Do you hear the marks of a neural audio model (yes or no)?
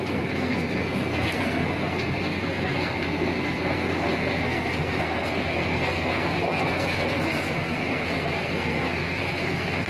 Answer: yes